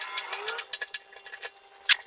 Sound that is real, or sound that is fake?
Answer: real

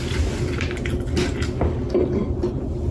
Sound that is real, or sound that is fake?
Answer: real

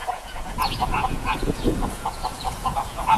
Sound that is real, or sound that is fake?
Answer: fake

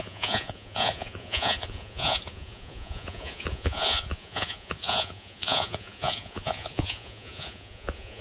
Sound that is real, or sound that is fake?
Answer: fake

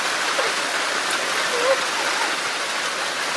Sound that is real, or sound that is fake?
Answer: real